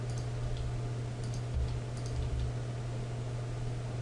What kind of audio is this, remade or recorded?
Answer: recorded